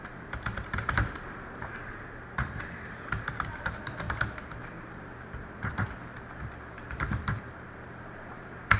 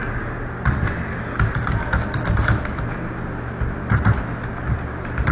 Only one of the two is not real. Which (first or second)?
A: first